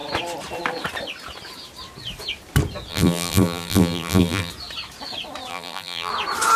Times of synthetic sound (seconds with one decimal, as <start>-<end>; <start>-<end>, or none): 2.9-4.5; 5.5-6.1